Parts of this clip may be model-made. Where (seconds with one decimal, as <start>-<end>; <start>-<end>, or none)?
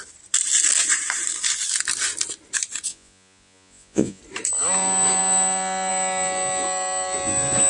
2.9-4.2